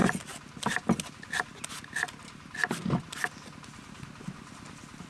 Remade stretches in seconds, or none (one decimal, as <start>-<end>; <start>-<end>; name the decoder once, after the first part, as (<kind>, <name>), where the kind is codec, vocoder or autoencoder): none